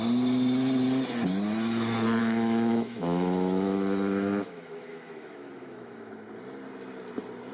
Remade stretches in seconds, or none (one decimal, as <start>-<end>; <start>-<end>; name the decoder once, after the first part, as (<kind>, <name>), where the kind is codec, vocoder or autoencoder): 2.2-6.1 (autoencoder, DAC-VAE)